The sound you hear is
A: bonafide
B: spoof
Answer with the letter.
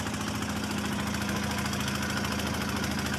A